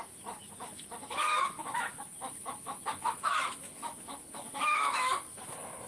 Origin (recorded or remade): remade